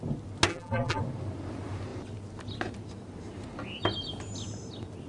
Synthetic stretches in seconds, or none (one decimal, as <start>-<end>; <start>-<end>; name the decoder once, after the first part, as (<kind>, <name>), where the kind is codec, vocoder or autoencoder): 0.5-1.0 (vocoder, BigVGAN v2)